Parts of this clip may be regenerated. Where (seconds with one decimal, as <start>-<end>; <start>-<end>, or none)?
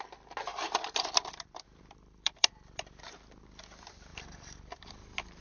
0.5-3.0; 4.1-4.9